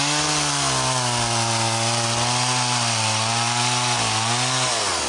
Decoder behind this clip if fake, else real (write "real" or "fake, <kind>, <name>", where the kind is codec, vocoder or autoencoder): real